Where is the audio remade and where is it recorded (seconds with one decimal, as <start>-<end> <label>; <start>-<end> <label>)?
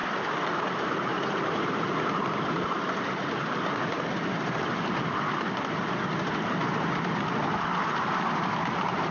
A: 0.0-9.1 recorded